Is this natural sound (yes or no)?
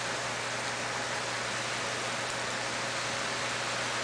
yes